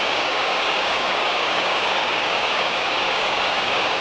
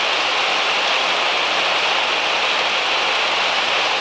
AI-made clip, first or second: first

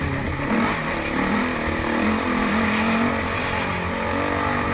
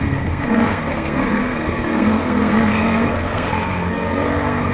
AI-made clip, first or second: second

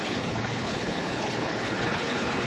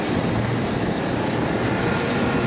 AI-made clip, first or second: first